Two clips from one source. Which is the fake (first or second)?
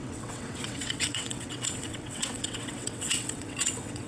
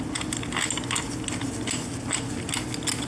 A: first